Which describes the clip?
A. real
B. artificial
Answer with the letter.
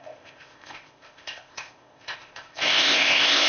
B